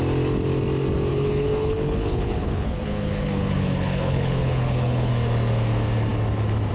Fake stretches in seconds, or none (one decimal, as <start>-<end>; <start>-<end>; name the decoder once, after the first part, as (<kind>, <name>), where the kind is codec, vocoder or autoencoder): 1.1-5.1 (codec, HILCodec)